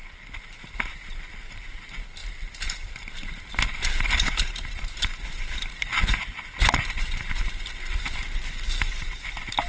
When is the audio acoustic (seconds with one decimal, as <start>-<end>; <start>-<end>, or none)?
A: 0.0-9.7